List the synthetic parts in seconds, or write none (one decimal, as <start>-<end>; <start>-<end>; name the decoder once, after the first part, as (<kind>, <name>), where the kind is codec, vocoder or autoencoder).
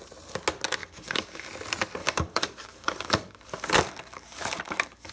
0.8-1.5 (codec, DAC); 2.0-5.1